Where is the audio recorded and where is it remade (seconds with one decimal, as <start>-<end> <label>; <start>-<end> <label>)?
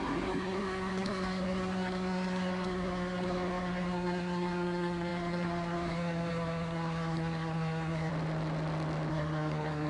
0.0-8.1 remade; 8.1-9.1 recorded; 9.1-9.9 remade